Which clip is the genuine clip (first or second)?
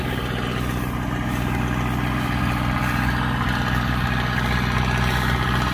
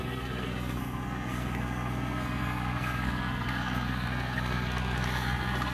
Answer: first